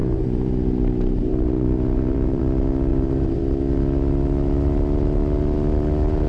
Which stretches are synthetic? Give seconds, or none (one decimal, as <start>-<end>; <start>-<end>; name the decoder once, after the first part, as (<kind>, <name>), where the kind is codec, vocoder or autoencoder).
0.0-2.4 (vocoder, BigVGAN v2); 2.9-3.4